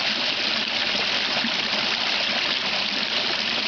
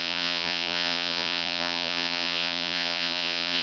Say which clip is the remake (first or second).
second